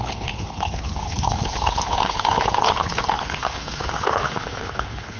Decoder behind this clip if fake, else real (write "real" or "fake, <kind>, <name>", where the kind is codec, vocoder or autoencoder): fake, codec, HILCodec